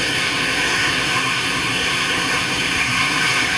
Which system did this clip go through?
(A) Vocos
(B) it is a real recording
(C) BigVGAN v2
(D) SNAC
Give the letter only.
D